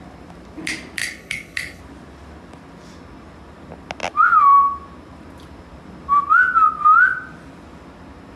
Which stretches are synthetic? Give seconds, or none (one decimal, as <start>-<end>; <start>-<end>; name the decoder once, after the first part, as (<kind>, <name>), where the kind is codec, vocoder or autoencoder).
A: 1.0-1.8 (codec, HILCodec)